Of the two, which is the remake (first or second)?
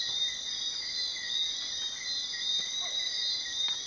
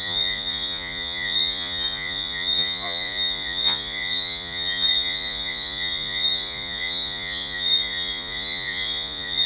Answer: second